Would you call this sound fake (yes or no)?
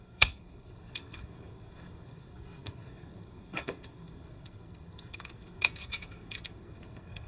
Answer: yes